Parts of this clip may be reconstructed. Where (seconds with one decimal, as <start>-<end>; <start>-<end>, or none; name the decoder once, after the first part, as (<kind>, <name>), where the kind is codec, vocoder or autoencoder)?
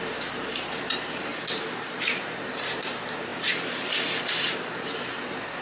0.0-1.3 (vocoder, BigVGAN v2); 1.9-5.6